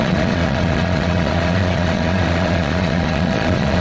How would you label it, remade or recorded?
remade